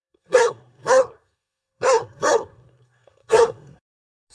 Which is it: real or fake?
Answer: fake